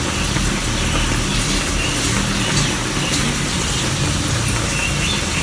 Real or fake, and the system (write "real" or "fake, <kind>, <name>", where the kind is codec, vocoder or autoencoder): real